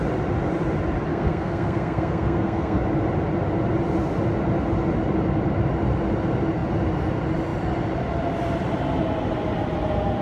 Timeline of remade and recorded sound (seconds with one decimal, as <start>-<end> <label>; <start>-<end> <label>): 0.0-1.1 recorded; 1.1-2.8 remade; 2.8-10.2 recorded